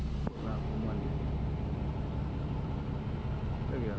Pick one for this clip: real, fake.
real